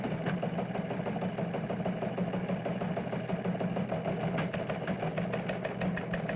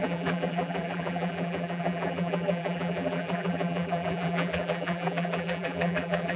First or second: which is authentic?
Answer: first